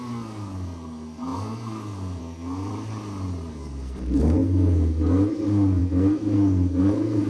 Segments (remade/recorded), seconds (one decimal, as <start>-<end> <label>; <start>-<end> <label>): 0.0-2.7 remade; 2.7-3.5 recorded; 3.5-7.3 remade